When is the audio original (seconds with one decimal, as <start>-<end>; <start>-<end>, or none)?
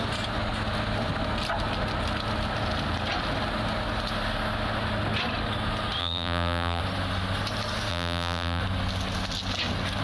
0.0-6.0; 6.8-7.9; 8.6-10.0